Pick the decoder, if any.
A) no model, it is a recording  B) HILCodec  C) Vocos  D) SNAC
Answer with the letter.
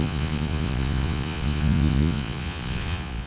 C